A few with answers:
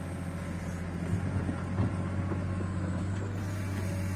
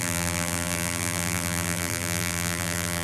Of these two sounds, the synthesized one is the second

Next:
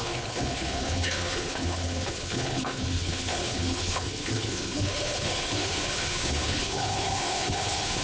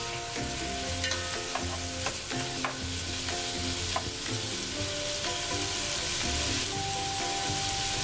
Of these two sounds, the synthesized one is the first